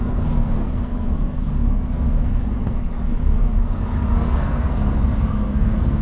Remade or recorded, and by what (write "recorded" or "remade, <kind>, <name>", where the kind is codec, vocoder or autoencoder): remade, codec, SNAC